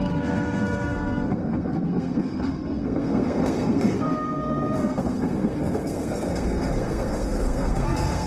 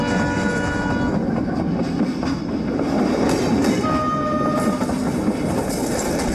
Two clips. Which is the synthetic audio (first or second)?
first